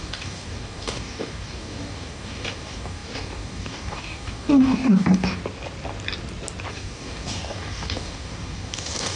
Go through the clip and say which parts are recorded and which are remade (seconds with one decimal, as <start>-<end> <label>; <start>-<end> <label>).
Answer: 0.0-5.4 remade; 5.4-6.7 recorded; 6.7-9.2 remade